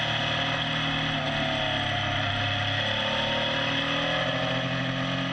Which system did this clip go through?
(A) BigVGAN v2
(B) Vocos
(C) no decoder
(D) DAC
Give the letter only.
C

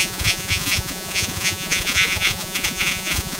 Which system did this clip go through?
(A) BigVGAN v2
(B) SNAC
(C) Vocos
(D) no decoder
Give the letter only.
C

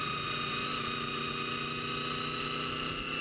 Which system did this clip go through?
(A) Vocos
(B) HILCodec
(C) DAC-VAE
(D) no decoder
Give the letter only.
D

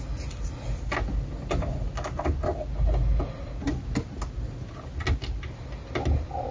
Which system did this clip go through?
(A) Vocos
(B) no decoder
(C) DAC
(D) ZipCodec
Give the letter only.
B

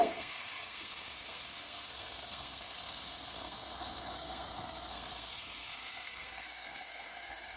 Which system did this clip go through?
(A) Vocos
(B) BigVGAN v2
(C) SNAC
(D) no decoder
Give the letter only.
C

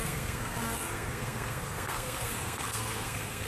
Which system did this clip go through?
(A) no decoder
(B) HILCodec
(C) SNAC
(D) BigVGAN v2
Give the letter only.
C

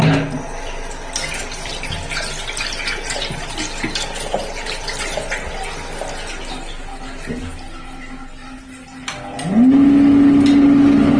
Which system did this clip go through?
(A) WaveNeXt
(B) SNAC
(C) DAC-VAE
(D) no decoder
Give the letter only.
D